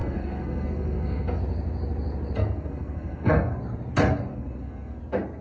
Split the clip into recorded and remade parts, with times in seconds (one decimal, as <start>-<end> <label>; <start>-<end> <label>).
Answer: 0.0-1.4 remade; 1.4-2.4 recorded; 2.4-3.6 remade; 3.6-4.3 recorded; 4.3-5.0 remade; 5.0-5.4 recorded